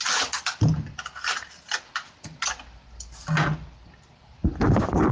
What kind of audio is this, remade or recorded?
recorded